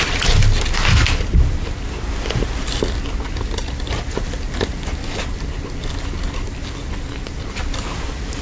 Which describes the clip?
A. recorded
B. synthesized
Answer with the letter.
A